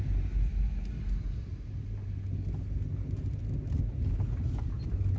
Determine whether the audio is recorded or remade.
recorded